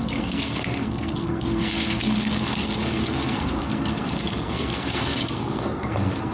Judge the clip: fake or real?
fake